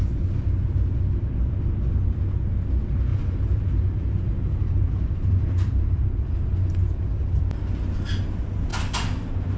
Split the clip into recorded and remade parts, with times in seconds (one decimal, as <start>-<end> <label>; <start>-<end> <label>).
0.0-3.1 recorded; 3.1-7.4 remade; 7.4-9.6 recorded